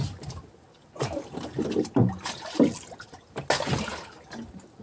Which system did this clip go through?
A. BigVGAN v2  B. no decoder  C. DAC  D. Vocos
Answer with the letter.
B